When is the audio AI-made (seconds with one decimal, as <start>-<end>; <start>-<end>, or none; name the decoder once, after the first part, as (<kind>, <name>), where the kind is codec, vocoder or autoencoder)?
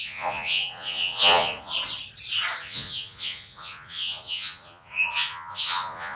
0.0-1.7 (vocoder, Vocos); 2.6-6.2